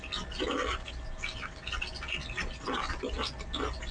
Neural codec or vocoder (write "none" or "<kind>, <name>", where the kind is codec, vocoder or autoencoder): none